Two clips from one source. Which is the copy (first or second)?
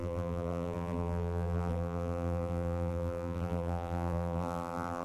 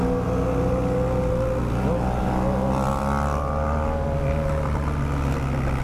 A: first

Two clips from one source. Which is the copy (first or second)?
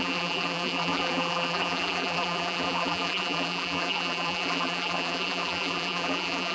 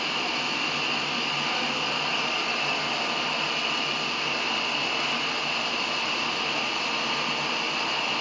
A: first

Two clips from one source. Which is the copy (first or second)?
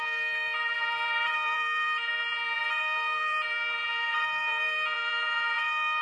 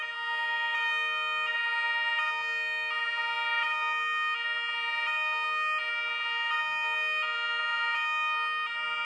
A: first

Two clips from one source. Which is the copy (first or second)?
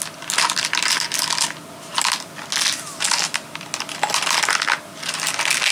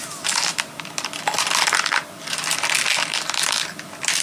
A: second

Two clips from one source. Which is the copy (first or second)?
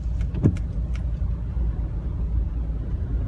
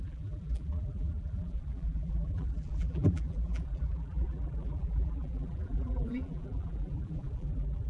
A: second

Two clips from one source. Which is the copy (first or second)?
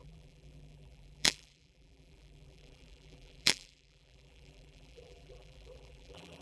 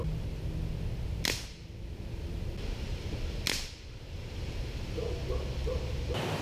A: first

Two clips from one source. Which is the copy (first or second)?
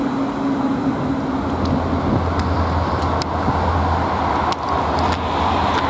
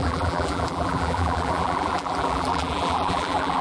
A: second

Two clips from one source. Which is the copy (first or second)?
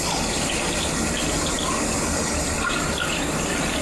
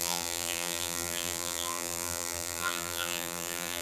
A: second